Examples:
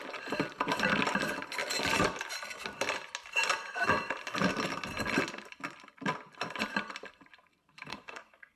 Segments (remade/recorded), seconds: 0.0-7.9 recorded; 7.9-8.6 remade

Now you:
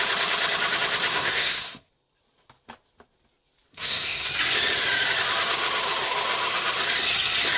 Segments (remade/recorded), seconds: 0.0-1.1 recorded; 1.1-1.9 remade; 1.9-3.7 recorded; 3.7-4.3 remade; 4.3-7.6 recorded

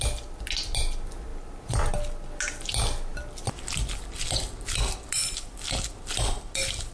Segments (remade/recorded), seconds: 0.0-6.9 recorded

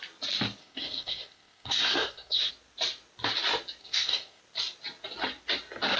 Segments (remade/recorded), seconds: 0.0-0.6 recorded; 0.6-2.5 remade; 2.5-3.8 recorded; 3.8-4.4 remade; 4.4-6.0 recorded

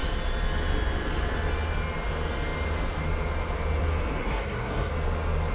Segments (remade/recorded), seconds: 0.0-4.2 recorded; 4.2-4.9 remade; 4.9-5.5 recorded